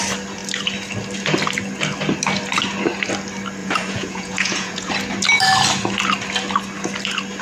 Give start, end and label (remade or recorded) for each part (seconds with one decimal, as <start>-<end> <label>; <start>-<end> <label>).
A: 0.0-3.6 recorded; 3.6-4.9 remade; 4.9-7.4 recorded